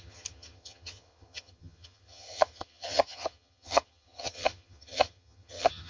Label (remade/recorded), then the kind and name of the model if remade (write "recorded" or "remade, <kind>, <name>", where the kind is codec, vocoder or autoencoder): remade, vocoder, HiFi-GAN